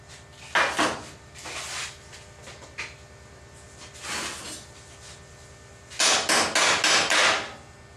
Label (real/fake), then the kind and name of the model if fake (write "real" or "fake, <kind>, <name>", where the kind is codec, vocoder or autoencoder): real